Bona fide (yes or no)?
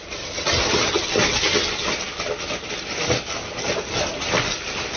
yes